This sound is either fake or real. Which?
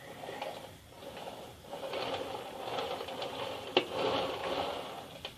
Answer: real